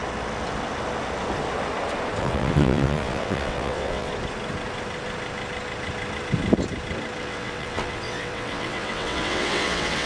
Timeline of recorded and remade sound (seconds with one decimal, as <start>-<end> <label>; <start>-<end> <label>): 0.0-2.2 recorded; 2.2-4.1 remade; 4.1-7.2 recorded; 7.2-10.1 remade